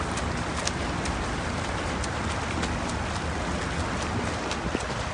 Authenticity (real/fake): real